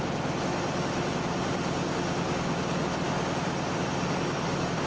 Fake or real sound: real